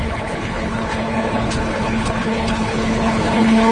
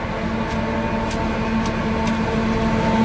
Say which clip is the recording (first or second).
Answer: second